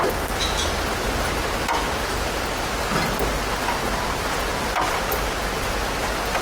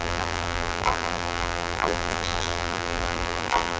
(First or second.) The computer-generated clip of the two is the second